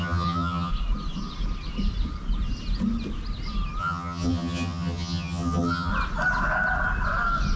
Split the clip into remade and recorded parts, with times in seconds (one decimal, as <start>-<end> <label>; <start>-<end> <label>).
0.0-0.7 remade; 0.7-3.8 recorded; 3.8-5.9 remade; 5.9-7.6 recorded